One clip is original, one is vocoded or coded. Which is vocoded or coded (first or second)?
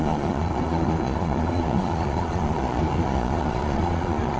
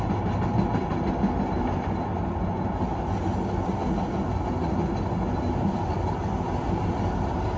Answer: first